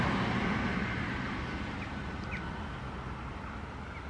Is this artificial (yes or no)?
no